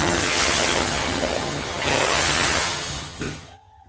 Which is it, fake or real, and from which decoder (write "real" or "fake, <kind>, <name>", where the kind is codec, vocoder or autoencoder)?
fake, vocoder, HiFi-GAN